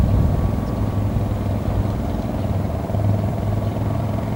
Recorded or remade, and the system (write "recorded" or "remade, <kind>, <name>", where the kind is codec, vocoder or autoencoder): recorded